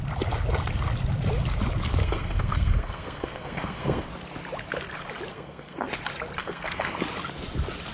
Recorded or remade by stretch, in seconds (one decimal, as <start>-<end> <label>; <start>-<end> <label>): 0.0-2.0 recorded; 2.0-4.1 remade; 4.1-5.3 recorded; 5.3-5.9 remade; 5.9-6.4 recorded; 6.4-7.0 remade; 7.0-7.9 recorded